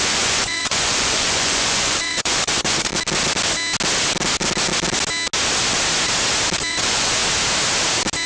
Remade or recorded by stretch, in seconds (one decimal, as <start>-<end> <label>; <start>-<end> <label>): 0.0-2.9 remade; 2.9-6.7 recorded; 6.7-7.2 remade; 7.2-8.3 recorded